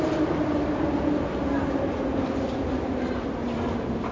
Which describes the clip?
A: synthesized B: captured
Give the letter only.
B